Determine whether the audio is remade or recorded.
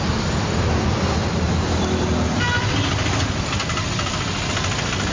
recorded